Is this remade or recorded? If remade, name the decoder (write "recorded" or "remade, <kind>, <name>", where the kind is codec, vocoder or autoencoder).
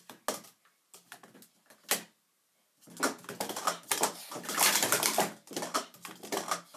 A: recorded